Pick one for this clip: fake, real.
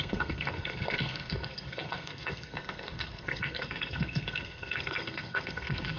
fake